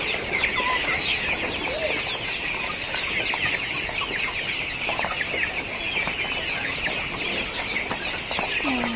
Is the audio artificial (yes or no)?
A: no